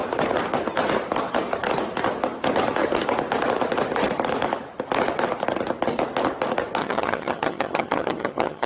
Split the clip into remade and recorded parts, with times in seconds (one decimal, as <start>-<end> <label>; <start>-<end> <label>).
0.0-6.8 recorded; 6.8-8.7 remade